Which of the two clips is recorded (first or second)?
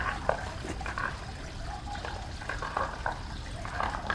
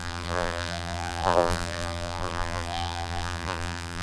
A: first